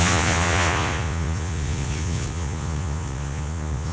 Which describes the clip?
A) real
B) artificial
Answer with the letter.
B